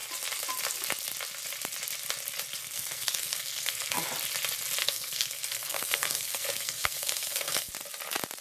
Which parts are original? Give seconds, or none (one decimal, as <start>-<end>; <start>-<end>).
0.0-2.6; 4.1-4.8; 7.7-8.4